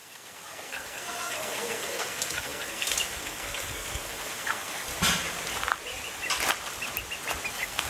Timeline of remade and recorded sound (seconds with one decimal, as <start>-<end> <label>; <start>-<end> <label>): 0.0-4.9 remade; 4.9-7.5 recorded; 7.5-7.9 remade